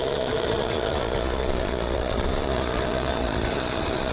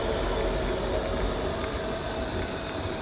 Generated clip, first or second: first